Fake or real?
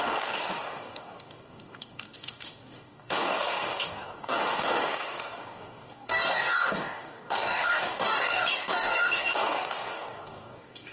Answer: fake